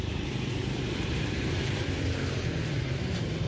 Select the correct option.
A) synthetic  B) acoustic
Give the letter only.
A